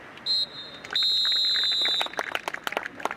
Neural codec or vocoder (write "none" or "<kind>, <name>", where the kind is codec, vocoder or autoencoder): none